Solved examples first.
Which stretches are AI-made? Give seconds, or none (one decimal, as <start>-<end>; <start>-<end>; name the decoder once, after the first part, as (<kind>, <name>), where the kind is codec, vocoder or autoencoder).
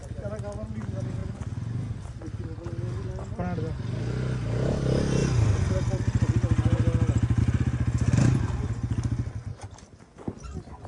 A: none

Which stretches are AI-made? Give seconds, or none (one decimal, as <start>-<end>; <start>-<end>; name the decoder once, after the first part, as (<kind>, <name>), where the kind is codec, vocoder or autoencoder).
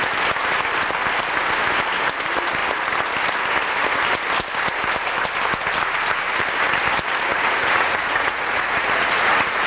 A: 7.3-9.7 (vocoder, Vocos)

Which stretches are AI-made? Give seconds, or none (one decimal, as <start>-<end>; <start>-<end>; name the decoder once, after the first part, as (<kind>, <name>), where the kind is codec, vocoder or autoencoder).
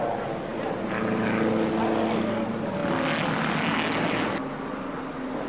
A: none